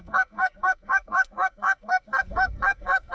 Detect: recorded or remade remade